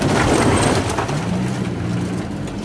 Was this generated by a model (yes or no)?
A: no